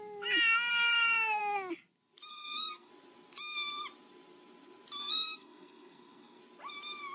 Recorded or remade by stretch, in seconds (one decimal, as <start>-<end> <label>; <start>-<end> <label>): 0.0-0.7 recorded; 0.7-1.4 remade; 1.4-2.3 recorded; 2.3-2.9 remade; 2.9-5.0 recorded; 5.0-6.4 remade; 6.4-7.1 recorded